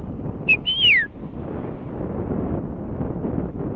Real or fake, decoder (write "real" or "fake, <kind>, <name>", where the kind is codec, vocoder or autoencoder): real